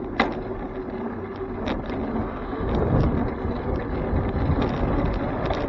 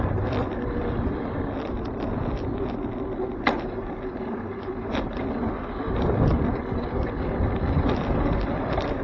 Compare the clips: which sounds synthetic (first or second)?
second